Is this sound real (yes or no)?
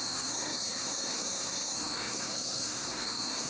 no